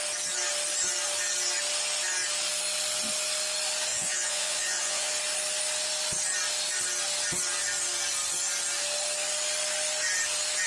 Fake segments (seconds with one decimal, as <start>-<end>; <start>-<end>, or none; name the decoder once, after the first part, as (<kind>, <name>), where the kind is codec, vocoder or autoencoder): 3.9-5.1 (vocoder, Vocos)